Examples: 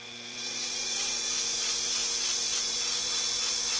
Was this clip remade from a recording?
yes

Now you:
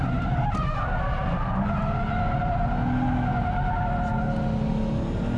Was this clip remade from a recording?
no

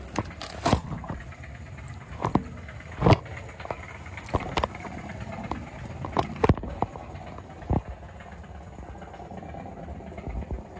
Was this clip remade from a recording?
no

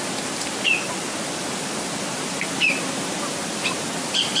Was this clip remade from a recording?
no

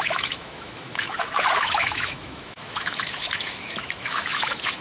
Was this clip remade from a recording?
yes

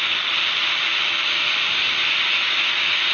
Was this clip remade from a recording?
no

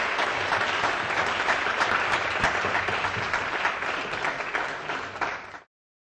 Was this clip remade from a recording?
no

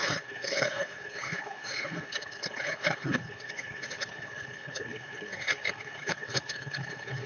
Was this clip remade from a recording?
yes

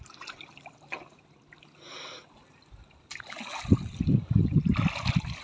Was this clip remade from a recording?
no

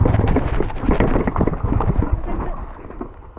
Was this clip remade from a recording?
no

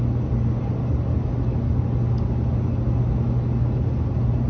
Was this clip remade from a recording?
no